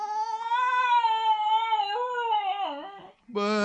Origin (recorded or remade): recorded